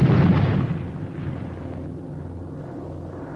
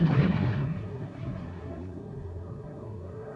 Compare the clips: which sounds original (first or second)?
first